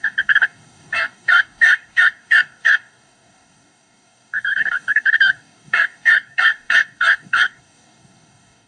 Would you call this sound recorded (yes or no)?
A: no